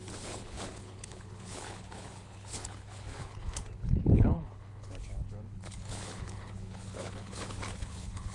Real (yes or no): no